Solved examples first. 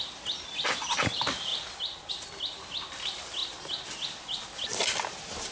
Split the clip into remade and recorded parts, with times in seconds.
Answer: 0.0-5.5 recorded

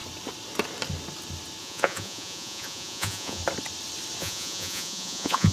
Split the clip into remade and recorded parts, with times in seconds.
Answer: 0.0-1.6 recorded; 1.6-3.4 remade; 3.4-4.2 recorded; 4.2-5.5 remade

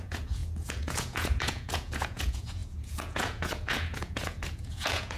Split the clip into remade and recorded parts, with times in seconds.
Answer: 0.0-5.2 remade

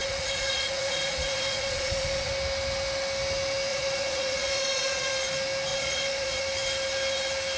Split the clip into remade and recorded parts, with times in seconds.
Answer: 0.0-2.3 remade; 2.3-3.7 recorded; 3.7-5.1 remade; 5.1-5.7 recorded; 5.7-6.4 remade; 6.4-7.6 recorded